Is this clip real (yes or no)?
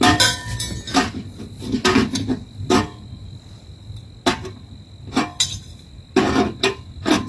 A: yes